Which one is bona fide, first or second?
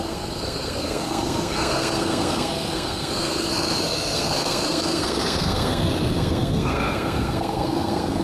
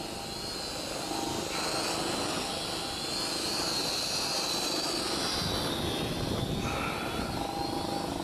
second